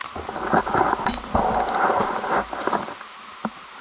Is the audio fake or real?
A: real